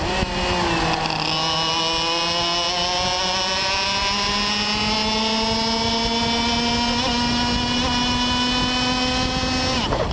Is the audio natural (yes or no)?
yes